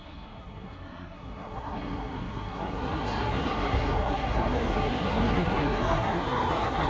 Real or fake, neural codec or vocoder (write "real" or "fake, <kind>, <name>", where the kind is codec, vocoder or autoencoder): fake, codec, SNAC